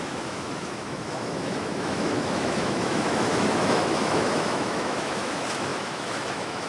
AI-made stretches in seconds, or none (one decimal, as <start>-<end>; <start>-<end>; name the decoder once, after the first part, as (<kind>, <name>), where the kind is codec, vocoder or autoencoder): 0.0-6.7 (autoencoder, DAC-VAE)